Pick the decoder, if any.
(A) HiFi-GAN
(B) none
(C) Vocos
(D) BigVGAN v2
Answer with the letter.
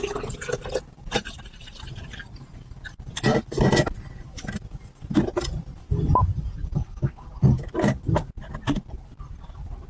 B